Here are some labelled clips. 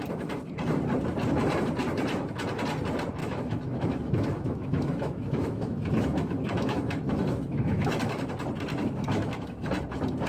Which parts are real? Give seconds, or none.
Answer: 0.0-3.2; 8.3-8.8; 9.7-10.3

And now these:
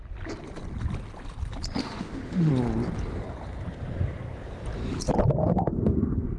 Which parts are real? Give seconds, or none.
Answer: 0.0-1.8; 2.5-5.4